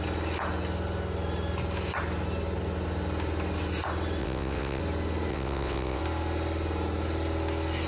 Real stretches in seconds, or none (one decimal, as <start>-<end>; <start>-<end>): 0.0-4.2; 4.8-5.3; 6.0-7.9